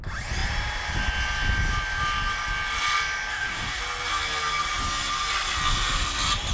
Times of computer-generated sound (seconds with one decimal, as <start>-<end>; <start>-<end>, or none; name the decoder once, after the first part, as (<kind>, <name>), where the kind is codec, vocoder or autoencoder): 3.3-3.8 (codec, DAC)

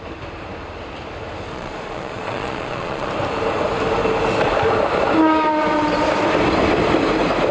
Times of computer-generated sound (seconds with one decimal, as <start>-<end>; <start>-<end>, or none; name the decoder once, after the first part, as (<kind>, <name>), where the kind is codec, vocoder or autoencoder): 1.5-3.1 (vocoder, Vocos)

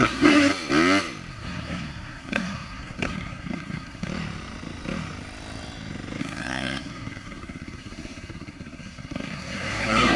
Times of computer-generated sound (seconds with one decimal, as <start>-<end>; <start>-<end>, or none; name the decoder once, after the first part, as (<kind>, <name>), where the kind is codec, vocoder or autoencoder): 0.0-0.5 (codec, SNAC); 1.3-4.1; 6.2-10.2

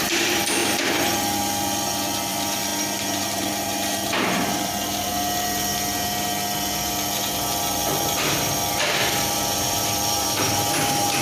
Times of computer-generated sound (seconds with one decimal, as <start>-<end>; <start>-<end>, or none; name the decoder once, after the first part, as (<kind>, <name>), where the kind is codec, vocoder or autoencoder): 0.0-0.6 (vocoder, BigVGAN v2); 2.3-2.7; 3.2-7.8; 8.7-11.2

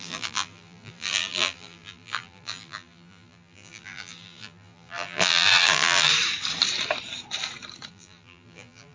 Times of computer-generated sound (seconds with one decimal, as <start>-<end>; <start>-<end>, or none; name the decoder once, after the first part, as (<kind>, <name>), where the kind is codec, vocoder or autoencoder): 0.0-6.1 (vocoder, BigVGAN v2); 7.9-8.9

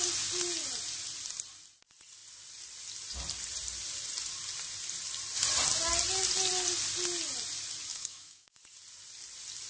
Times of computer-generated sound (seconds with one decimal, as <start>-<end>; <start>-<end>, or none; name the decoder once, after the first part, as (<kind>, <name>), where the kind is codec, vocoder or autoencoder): 7.9-8.6 (autoencoder, DAC-VAE)